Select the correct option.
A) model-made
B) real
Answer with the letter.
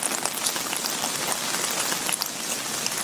B